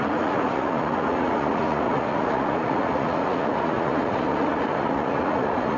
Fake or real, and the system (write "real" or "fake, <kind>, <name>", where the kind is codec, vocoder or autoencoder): fake, vocoder, Vocos